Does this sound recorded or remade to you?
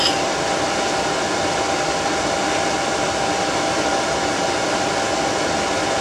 recorded